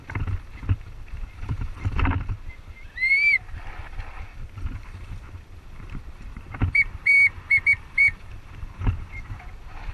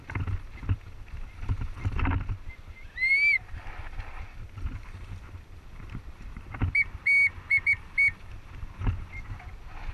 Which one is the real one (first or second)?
second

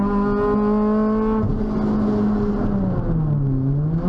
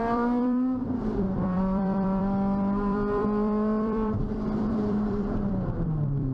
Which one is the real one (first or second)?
first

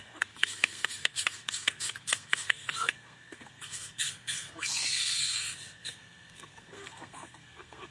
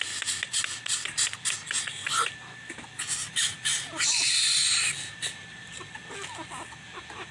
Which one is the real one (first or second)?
second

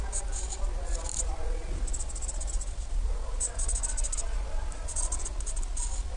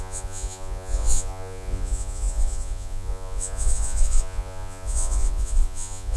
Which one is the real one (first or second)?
first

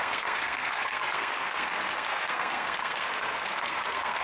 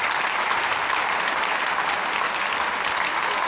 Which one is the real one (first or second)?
second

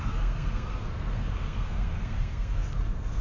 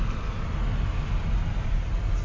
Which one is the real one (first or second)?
second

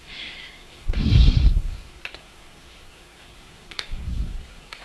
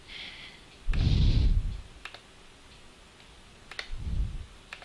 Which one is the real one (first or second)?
second